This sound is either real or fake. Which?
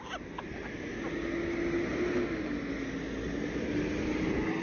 real